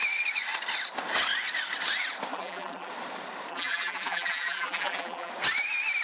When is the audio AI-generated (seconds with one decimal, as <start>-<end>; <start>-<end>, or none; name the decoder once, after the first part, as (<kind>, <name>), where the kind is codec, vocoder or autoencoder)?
2.3-2.9 (vocoder, BigVGAN v2); 3.5-5.3